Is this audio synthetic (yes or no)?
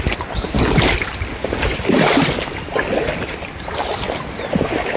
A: no